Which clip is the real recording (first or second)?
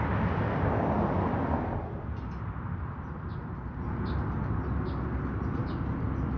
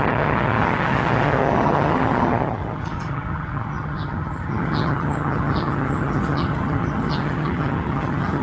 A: first